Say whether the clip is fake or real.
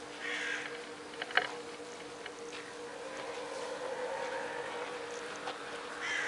real